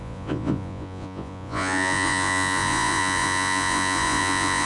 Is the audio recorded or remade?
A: remade